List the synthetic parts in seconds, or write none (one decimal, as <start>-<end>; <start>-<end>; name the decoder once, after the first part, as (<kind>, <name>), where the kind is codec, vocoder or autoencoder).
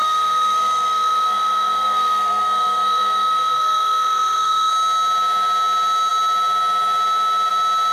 0.0-4.7 (codec, SNAC)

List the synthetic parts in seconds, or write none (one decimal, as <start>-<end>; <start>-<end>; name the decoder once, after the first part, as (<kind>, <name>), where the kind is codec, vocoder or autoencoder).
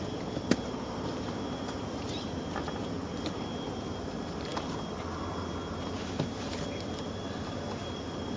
none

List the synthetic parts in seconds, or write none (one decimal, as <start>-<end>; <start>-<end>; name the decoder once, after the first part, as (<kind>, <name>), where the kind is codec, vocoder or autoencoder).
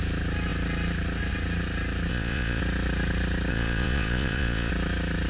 2.1-2.6 (vocoder, Vocos); 3.5-4.7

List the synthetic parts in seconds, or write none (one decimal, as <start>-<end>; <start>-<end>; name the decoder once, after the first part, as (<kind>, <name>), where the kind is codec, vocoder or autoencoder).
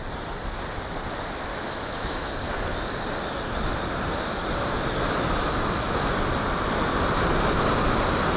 1.5-2.3 (autoencoder, DAC-VAE)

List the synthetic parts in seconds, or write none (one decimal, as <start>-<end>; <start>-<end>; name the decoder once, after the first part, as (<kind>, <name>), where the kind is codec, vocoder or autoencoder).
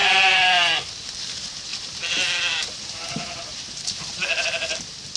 0.0-1.1 (vocoder, BigVGAN v2); 1.7-4.8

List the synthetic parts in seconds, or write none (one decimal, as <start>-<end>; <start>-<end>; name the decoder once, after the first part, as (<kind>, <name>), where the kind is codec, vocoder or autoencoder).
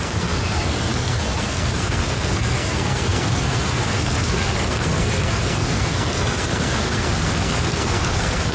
0.0-8.5 (codec, SNAC)